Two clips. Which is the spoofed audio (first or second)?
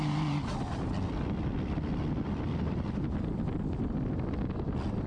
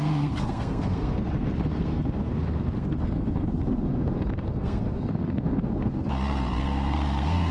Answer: second